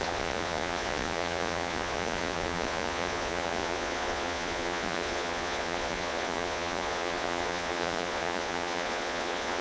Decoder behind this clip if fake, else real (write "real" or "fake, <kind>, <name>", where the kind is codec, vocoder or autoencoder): fake, vocoder, Vocos